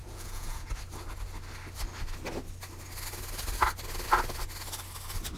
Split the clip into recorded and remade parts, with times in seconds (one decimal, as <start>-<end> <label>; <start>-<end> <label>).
0.0-0.7 remade; 0.7-5.4 recorded